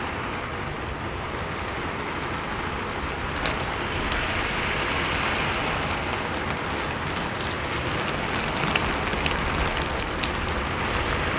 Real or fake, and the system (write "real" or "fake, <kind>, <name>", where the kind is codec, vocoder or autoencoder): real